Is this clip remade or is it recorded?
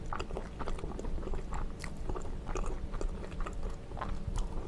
recorded